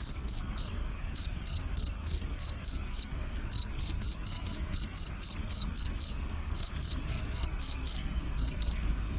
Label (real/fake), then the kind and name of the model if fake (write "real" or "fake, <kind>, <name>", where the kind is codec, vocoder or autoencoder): fake, codec, SNAC